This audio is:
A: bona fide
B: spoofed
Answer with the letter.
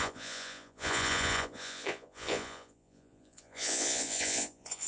B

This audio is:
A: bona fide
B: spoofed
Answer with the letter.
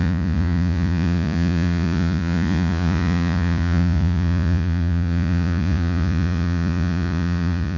B